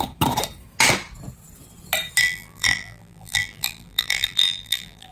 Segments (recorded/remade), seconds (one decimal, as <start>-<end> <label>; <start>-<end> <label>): 0.0-2.2 recorded; 2.2-5.1 remade